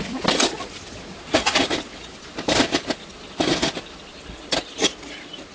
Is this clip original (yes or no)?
yes